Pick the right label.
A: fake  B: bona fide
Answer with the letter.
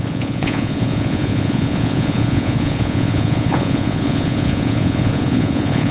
A